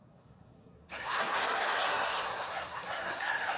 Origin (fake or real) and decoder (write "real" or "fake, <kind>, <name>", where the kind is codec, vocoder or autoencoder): fake, codec, SNAC